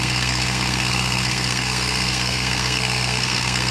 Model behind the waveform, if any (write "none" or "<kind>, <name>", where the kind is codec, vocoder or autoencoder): codec, SNAC